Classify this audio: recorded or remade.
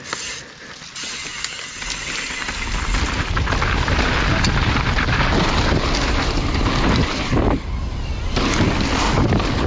recorded